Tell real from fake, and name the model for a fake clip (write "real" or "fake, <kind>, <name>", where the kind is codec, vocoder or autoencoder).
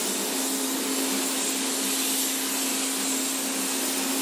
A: real